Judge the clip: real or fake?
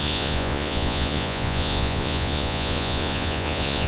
fake